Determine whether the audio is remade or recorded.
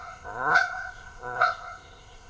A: remade